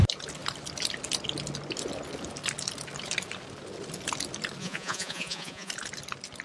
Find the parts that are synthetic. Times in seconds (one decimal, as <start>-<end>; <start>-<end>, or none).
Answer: 4.6-5.7